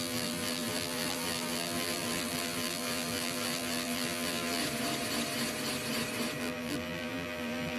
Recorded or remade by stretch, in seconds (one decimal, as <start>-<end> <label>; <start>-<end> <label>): 0.0-4.6 remade; 4.6-6.4 recorded; 6.4-7.8 remade